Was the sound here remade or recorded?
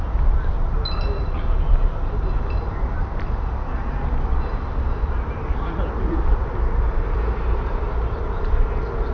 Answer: recorded